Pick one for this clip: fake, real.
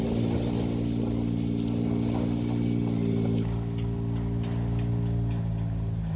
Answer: real